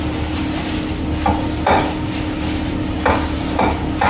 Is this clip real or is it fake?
real